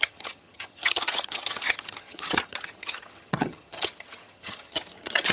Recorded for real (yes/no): no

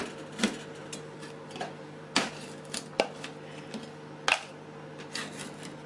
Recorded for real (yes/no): yes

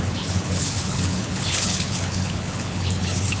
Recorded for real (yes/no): no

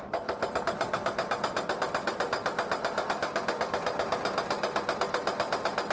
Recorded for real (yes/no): no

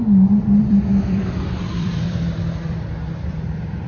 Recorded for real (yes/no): no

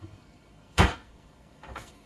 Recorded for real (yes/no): no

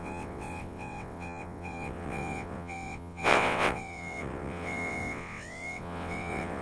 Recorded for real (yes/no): no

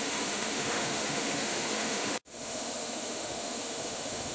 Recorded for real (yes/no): no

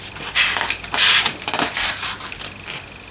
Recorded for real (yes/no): yes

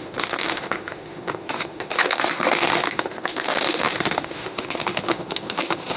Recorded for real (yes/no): no